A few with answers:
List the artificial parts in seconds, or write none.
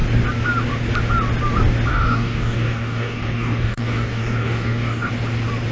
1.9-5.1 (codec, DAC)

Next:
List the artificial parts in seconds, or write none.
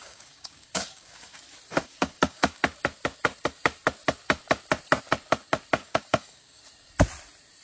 0.0-1.4 (codec, DAC); 1.8-2.6; 5.8-6.6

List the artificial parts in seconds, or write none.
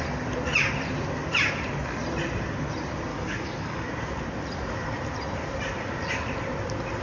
3.1-3.9 (codec, DAC)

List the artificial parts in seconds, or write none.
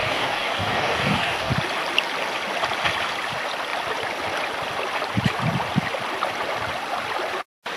0.0-1.5 (codec, DAC)